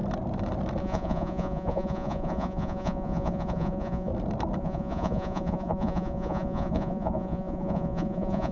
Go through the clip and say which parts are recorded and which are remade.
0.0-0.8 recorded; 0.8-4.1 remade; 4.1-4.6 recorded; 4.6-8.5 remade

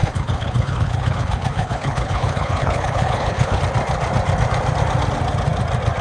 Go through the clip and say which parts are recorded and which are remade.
0.0-3.6 remade; 3.6-6.0 recorded

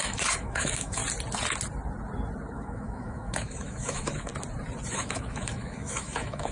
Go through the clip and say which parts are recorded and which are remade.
0.0-1.0 remade; 1.0-2.5 recorded; 2.5-4.3 remade; 4.3-4.9 recorded; 4.9-6.5 remade

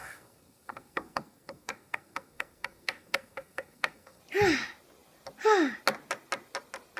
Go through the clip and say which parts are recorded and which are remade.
0.0-4.2 remade; 4.2-7.0 recorded

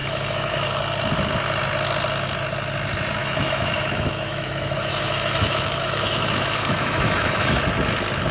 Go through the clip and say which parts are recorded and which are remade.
0.0-0.8 remade; 0.8-3.2 recorded; 3.2-7.6 remade; 7.6-8.3 recorded

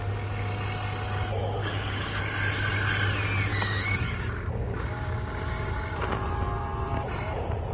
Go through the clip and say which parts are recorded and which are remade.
0.0-1.6 recorded; 1.6-2.2 remade; 2.2-3.5 recorded; 3.5-5.7 remade; 5.7-7.7 recorded

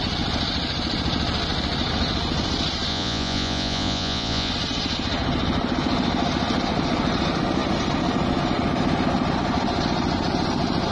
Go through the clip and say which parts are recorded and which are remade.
0.0-2.9 recorded; 2.9-4.5 remade; 4.5-10.9 recorded